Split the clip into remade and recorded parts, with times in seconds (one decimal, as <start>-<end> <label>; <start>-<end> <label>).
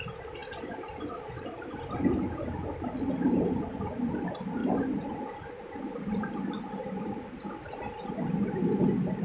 0.0-9.2 recorded